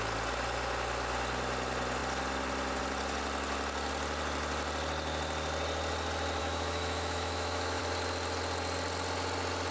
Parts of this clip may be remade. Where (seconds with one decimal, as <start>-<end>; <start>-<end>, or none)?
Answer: 6.4-7.8